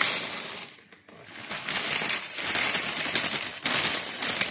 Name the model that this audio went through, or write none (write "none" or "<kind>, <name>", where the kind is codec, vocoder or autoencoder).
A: none